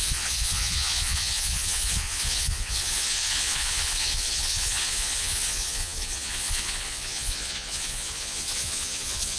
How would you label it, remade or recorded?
remade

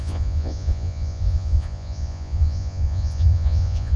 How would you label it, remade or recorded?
remade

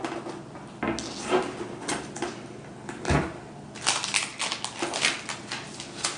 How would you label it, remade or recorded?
recorded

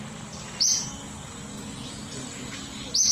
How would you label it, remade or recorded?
recorded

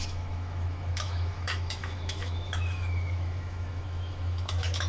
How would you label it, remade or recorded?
remade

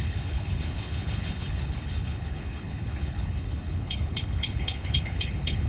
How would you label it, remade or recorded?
remade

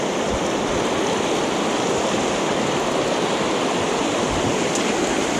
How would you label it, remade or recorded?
remade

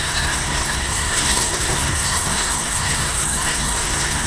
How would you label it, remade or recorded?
remade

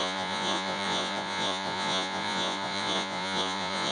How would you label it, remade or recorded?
remade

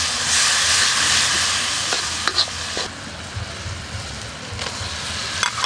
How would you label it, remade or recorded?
recorded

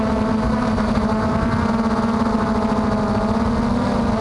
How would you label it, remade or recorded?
recorded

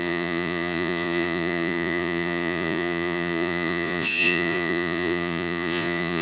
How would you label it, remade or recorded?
remade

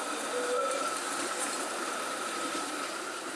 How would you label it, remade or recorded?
remade